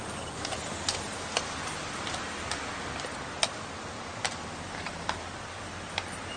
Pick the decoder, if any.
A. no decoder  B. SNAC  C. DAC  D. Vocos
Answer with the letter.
A